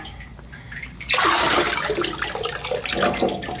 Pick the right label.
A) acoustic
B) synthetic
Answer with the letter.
A